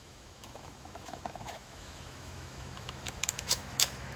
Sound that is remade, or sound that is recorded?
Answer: remade